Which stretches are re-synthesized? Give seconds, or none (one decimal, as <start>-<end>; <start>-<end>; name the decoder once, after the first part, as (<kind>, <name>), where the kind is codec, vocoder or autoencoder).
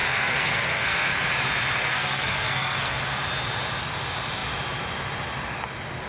0.0-1.2 (codec, SNAC); 1.9-3.0